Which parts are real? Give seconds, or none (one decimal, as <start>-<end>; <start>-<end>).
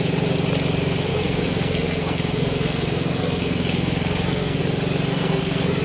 0.0-1.1; 4.6-5.1